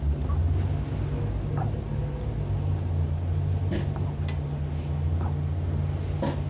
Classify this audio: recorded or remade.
recorded